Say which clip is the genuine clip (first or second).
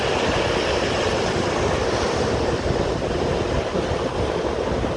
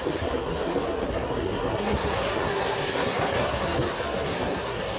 first